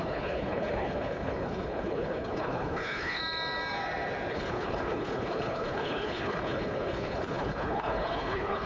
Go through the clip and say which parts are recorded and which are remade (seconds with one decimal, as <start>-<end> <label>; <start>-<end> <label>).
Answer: 0.0-3.2 remade; 3.2-4.3 recorded; 4.3-8.7 remade